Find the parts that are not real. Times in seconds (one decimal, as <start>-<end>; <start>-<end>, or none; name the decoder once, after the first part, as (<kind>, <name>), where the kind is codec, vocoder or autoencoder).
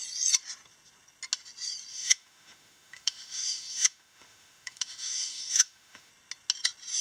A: 1.9-6.1 (autoencoder, DAC-VAE)